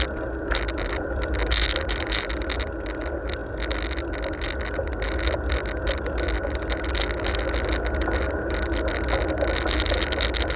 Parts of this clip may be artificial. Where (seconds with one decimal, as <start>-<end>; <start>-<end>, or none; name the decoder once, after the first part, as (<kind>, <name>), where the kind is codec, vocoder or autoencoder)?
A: none